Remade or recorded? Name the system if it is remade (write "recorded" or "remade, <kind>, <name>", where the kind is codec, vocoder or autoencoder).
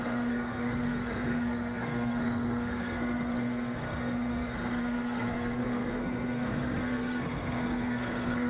remade, codec, SNAC